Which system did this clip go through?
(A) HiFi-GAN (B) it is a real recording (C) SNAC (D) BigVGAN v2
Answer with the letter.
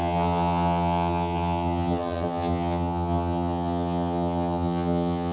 A